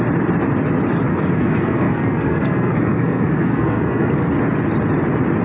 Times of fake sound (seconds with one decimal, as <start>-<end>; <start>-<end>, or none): 1.1-4.3